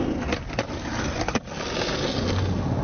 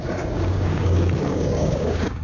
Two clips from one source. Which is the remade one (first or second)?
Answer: second